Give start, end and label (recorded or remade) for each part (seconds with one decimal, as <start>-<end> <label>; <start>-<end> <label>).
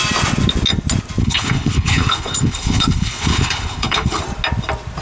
0.0-1.2 recorded; 1.2-4.2 remade; 4.2-5.0 recorded